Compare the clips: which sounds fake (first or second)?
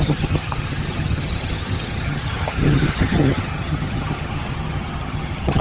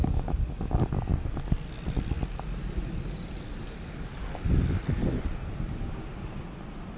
first